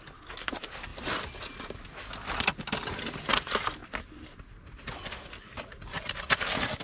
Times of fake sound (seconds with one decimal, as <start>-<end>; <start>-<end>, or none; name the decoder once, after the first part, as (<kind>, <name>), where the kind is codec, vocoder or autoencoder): none